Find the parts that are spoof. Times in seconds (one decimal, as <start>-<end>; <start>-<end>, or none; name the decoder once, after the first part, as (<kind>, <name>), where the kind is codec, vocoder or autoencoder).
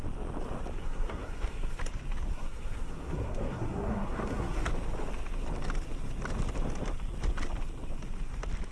0.8-1.8 (codec, SNAC); 2.3-4.7